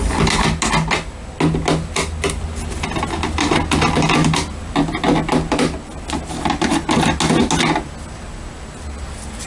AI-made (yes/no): no